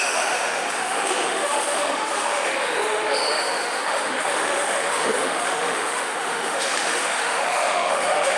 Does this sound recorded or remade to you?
remade